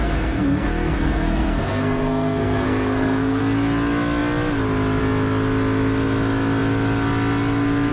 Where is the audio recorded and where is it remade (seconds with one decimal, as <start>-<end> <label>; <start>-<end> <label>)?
0.0-3.4 remade; 3.4-7.9 recorded

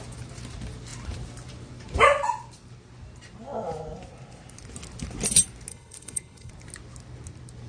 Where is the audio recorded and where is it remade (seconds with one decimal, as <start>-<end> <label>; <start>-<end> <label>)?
0.0-5.7 recorded; 5.7-6.5 remade; 6.5-7.7 recorded

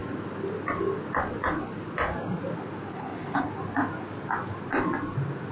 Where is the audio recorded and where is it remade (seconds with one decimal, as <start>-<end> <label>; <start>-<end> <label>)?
0.0-2.9 recorded; 2.9-3.5 remade; 3.5-5.5 recorded

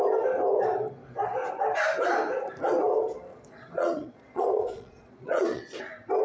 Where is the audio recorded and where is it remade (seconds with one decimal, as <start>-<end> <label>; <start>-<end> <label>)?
0.0-3.3 recorded; 3.3-5.8 remade; 5.8-6.2 recorded

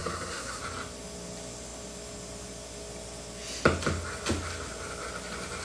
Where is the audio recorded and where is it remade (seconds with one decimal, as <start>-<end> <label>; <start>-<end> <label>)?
0.0-0.6 remade; 0.6-5.6 recorded

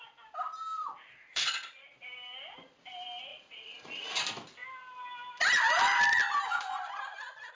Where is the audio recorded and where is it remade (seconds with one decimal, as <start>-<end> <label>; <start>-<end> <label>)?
0.0-1.3 recorded; 1.3-2.0 remade; 2.0-3.3 recorded; 3.3-4.0 remade; 4.0-7.5 recorded